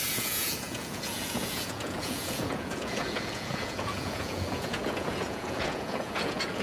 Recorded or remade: remade